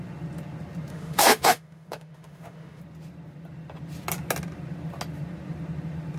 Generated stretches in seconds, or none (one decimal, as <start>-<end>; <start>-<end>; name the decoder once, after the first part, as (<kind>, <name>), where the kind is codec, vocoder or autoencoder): 0.9-2.8 (autoencoder, DAC-VAE)